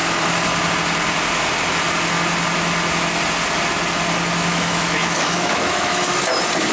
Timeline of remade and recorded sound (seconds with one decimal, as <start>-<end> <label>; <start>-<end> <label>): 0.0-4.5 recorded; 4.5-6.1 remade; 6.1-6.7 recorded